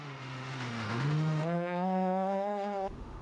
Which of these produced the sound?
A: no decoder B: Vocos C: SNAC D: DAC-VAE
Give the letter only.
D